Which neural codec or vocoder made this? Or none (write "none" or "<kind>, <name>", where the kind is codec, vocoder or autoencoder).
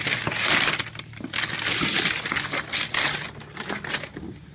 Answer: none